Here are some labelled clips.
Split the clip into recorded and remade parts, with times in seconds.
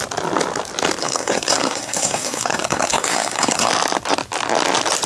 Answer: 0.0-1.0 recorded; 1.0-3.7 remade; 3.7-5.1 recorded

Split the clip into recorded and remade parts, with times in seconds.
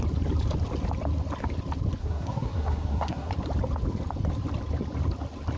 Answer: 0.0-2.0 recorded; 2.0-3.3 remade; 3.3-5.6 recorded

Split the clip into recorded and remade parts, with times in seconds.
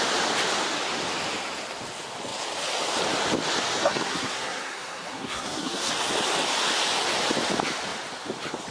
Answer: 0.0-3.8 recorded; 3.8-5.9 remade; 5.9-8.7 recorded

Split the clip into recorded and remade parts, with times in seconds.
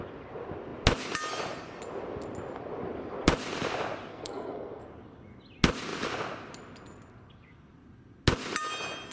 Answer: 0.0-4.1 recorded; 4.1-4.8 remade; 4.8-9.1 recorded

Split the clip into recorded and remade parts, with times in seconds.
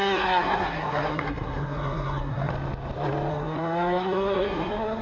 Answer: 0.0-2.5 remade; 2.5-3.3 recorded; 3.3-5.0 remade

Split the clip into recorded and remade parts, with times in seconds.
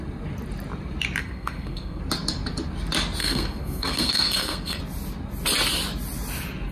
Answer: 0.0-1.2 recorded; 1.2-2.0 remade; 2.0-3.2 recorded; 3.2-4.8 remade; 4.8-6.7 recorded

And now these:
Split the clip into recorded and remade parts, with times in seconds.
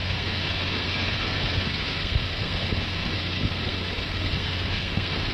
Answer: 0.0-5.3 remade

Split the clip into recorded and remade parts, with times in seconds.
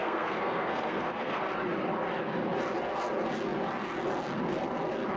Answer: 0.0-1.4 remade; 1.4-5.2 recorded